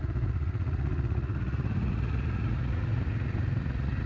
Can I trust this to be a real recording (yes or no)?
no